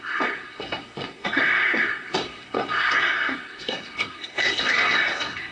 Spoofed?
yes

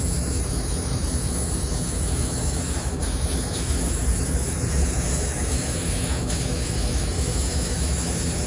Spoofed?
yes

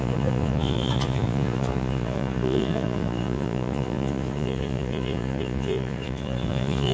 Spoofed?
yes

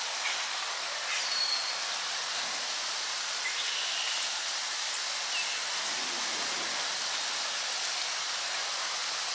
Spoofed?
no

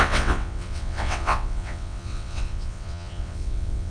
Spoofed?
yes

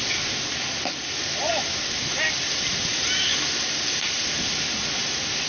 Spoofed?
no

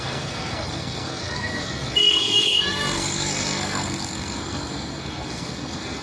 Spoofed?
yes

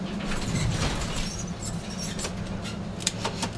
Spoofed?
no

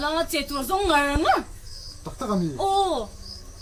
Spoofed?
yes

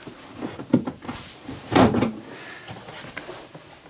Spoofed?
no